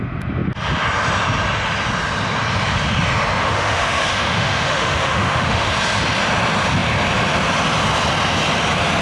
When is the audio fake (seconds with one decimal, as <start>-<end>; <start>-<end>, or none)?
3.4-5.7